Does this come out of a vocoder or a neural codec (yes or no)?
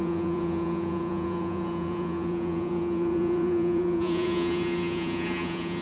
yes